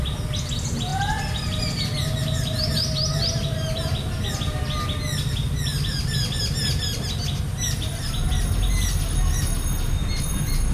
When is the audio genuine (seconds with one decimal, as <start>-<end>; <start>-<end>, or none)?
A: 0.0-10.7